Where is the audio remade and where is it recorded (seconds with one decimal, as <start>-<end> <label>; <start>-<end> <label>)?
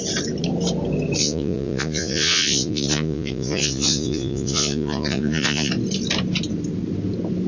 0.0-1.2 recorded; 1.2-5.7 remade; 5.7-7.5 recorded